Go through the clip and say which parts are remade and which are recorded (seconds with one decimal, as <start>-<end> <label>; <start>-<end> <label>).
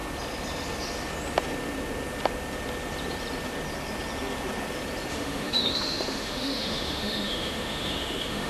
0.0-5.1 recorded; 5.1-8.5 remade